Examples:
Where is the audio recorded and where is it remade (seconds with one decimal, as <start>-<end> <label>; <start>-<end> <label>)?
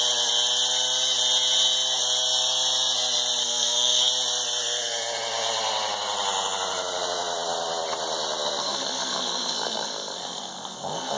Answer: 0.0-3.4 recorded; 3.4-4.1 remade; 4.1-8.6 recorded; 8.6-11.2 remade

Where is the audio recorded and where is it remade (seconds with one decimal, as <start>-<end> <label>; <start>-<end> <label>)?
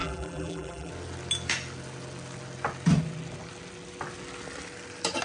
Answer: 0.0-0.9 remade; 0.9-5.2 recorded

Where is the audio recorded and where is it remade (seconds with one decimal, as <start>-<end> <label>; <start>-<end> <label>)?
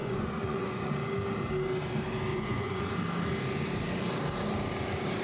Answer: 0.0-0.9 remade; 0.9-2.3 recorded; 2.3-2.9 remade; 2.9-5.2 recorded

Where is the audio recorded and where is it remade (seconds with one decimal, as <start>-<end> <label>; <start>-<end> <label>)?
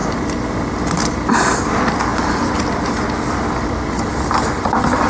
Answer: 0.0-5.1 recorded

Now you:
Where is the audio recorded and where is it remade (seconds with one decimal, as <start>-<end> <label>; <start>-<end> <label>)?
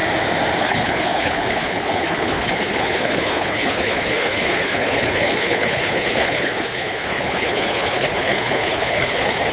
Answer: 0.0-0.6 recorded; 0.6-9.5 remade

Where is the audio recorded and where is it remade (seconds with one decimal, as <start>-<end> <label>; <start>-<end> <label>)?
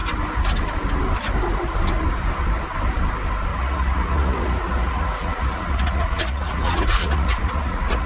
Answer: 0.0-3.5 recorded; 3.5-8.1 remade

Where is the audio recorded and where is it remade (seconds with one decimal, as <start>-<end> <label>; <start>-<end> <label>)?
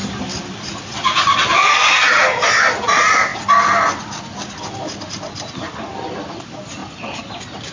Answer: 0.0-1.7 remade; 1.7-6.8 recorded; 6.8-7.3 remade; 7.3-7.7 recorded